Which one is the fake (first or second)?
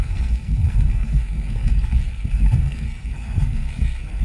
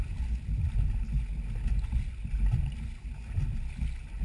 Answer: first